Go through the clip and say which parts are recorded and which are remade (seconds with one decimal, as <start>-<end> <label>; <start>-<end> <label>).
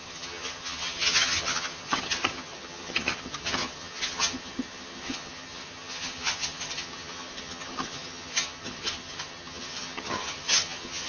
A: 0.0-11.1 remade